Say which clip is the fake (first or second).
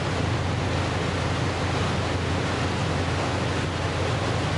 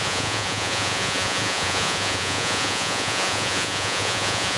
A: second